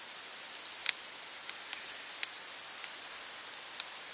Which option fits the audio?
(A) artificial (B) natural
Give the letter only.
B